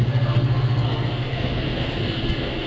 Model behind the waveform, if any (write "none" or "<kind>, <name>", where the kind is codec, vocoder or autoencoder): codec, SNAC